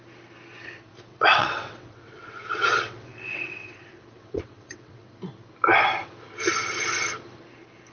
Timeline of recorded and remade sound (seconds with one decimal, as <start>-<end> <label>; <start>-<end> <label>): 0.0-1.1 recorded; 1.1-5.1 remade; 5.1-7.9 recorded